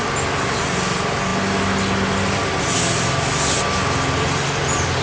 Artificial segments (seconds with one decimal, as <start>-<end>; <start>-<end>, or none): none